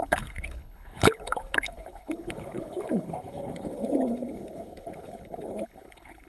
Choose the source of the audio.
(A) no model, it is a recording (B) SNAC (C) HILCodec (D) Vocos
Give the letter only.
C